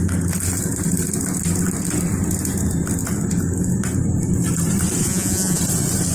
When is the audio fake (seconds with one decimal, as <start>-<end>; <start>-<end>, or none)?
5.0-5.6